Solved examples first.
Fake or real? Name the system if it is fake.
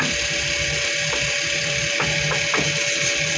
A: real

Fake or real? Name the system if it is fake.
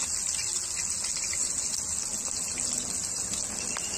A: real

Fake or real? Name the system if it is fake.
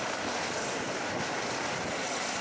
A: real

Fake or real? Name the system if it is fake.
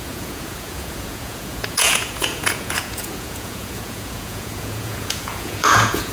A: fake, vocoder, Vocos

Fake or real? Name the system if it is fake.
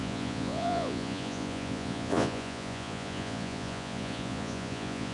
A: fake, vocoder, Vocos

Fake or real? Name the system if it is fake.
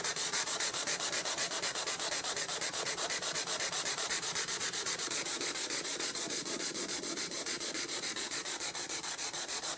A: fake, vocoder, Vocos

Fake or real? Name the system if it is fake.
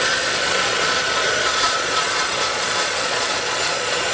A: fake, vocoder, Vocos